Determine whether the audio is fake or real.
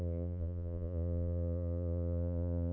fake